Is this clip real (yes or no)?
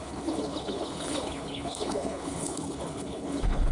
no